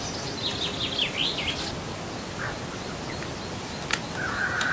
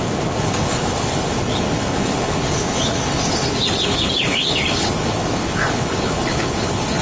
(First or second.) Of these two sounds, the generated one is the second